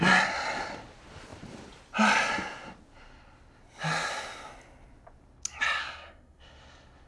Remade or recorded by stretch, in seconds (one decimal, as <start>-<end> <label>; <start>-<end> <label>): 0.0-5.8 recorded; 5.8-6.4 remade; 6.4-7.1 recorded